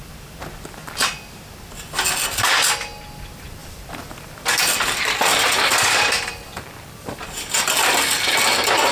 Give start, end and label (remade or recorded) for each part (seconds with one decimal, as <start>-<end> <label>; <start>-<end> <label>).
0.0-3.6 recorded; 3.6-8.4 remade; 8.4-8.9 recorded